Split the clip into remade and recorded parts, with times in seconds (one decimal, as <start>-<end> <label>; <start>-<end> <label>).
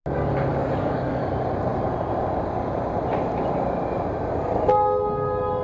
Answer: 0.0-0.5 recorded; 0.5-1.2 remade; 1.2-5.6 recorded